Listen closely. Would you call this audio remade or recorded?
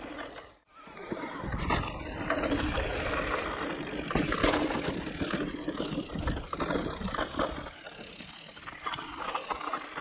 recorded